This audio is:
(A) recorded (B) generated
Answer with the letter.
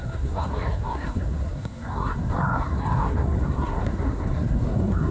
B